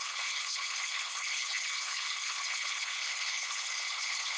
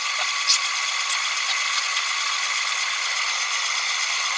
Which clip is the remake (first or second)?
first